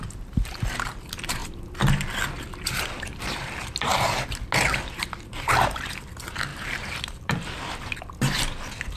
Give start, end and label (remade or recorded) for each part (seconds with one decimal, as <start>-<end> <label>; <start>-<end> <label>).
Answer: 0.0-6.5 recorded; 6.5-7.6 remade; 7.6-9.0 recorded